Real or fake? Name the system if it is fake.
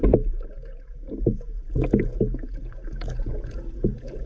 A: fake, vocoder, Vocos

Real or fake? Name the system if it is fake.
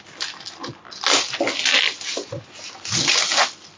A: real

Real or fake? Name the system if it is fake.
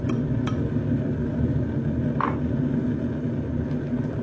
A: real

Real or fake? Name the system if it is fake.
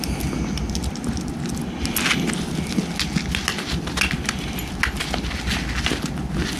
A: real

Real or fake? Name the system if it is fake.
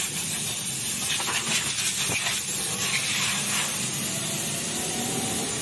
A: real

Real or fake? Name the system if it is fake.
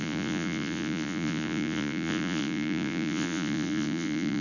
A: fake, vocoder, Vocos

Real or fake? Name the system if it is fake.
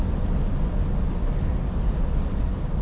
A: real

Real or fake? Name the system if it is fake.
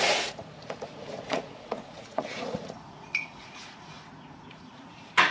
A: fake, vocoder, Vocos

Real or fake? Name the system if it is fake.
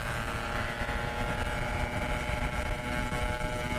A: real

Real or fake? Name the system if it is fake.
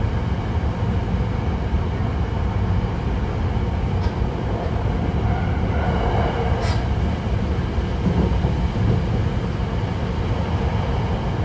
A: real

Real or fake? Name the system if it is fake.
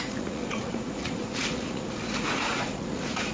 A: fake, vocoder, Vocos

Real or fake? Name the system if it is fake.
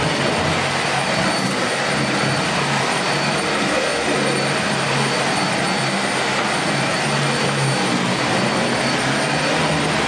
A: real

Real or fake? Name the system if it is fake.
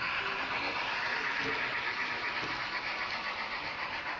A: real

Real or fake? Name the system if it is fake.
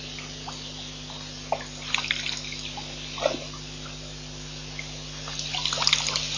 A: real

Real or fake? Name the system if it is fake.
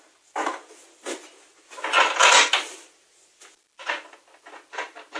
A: real